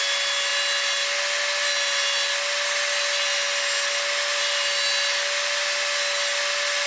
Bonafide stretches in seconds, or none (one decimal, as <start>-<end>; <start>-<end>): 0.0-6.9